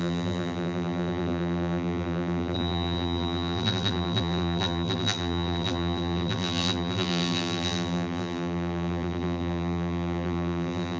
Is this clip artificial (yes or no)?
yes